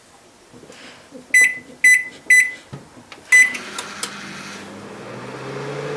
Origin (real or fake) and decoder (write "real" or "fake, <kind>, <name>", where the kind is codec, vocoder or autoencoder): real